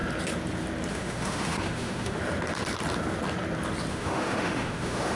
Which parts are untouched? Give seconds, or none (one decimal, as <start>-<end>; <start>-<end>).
0.0-0.9; 2.2-3.9